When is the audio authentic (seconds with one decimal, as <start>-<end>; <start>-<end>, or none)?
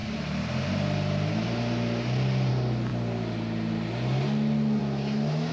0.0-5.5